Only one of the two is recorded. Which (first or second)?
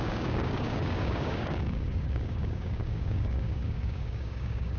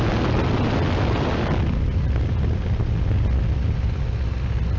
second